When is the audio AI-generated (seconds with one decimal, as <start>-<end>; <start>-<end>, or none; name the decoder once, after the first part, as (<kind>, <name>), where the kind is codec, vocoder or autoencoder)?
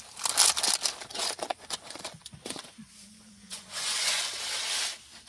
1.1-4.3 (vocoder, Vocos)